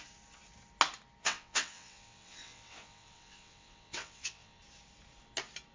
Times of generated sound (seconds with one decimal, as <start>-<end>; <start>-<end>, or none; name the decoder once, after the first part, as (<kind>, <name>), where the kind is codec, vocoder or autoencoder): 1.2-4.6 (vocoder, WaveNeXt)